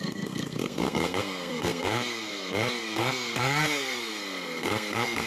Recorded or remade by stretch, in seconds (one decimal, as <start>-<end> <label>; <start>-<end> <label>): 0.0-5.3 remade